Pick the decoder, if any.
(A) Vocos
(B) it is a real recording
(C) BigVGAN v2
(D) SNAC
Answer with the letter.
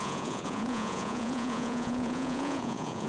A